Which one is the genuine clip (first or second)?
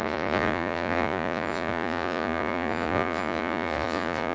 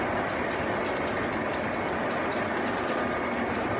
second